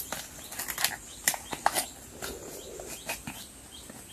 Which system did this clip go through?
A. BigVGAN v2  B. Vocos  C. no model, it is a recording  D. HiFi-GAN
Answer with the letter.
C